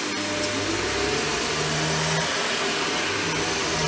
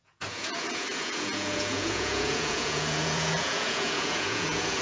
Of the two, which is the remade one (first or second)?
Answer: second